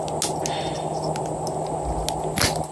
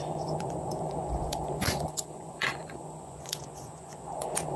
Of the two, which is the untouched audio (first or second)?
first